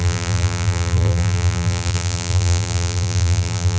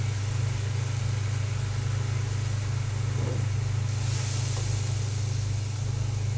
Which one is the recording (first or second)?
second